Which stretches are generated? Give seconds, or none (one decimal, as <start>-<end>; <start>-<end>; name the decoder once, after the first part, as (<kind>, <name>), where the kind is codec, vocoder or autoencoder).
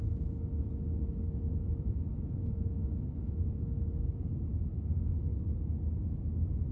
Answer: 0.0-5.3 (autoencoder, DAC-VAE); 6.2-6.7